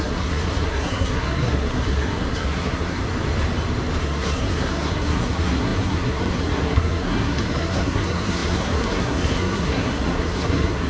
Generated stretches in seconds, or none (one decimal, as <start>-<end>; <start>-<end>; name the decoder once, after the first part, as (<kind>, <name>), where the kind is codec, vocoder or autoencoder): 0.0-3.0 (codec, SNAC); 4.0-10.9